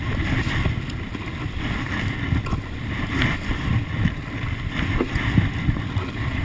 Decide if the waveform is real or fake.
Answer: real